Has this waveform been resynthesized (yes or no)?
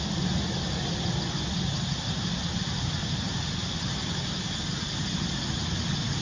no